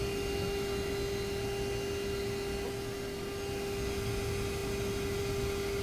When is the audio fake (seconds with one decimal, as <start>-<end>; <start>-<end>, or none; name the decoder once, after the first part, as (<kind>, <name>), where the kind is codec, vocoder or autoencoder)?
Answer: none

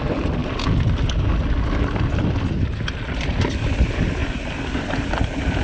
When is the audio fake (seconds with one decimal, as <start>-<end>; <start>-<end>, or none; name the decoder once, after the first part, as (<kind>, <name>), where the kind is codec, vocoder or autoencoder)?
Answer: none

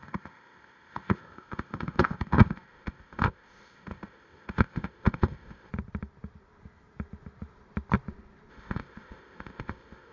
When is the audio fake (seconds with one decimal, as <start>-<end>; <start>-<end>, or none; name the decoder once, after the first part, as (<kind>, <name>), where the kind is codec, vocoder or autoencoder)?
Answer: 0.0-5.7 (codec, ZipCodec); 8.5-10.1

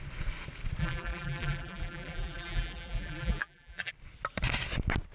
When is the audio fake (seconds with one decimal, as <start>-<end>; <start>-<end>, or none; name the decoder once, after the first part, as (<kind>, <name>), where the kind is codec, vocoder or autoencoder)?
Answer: 0.8-3.9 (vocoder, BigVGAN v2)

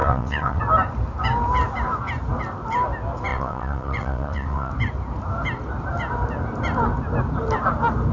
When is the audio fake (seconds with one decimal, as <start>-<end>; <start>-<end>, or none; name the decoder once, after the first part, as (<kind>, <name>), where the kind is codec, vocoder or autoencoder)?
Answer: 0.0-0.6 (vocoder, WaveNeXt); 3.3-4.7

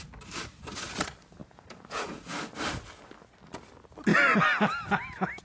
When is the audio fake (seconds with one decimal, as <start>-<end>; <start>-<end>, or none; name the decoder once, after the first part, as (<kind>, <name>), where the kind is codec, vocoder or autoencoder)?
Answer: 1.4-2.3 (vocoder, Vocos)